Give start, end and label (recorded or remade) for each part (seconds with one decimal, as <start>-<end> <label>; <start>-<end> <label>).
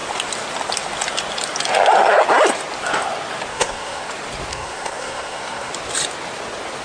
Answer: 0.0-3.5 recorded; 3.5-4.1 remade; 4.1-4.5 recorded; 4.5-5.7 remade; 5.7-6.8 recorded